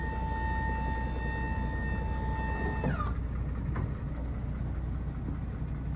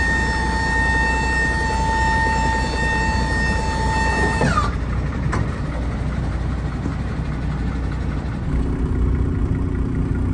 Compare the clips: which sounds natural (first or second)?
first